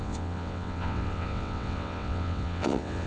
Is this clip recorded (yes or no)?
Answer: no